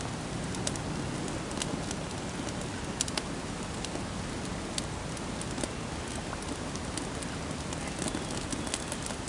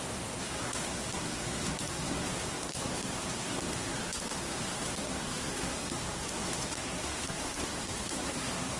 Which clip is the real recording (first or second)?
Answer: first